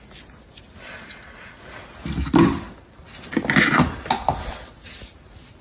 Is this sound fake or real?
real